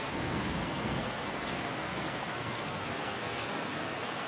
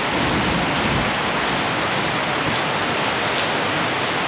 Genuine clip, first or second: second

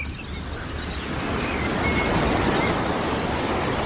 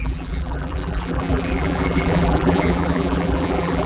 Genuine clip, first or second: first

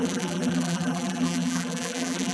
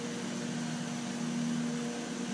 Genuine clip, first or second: second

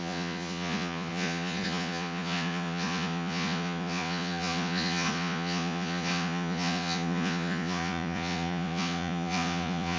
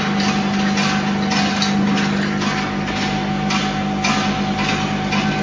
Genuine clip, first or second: second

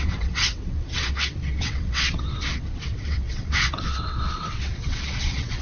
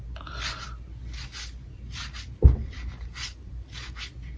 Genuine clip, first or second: second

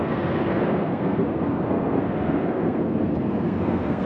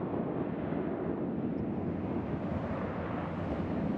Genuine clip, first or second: second